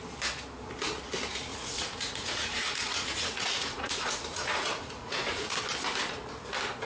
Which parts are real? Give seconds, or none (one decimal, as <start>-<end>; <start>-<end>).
0.0-1.5; 5.6-6.8